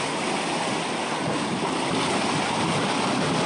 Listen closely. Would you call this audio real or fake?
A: real